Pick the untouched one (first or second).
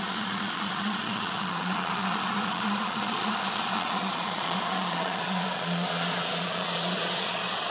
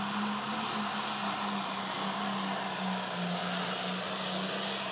second